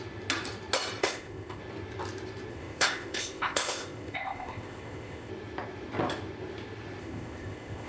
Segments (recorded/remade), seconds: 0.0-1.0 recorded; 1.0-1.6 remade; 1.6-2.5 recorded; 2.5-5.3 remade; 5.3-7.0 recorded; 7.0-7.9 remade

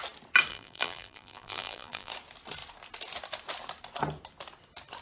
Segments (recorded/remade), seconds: 0.0-0.5 recorded; 0.5-2.1 remade; 2.1-5.0 recorded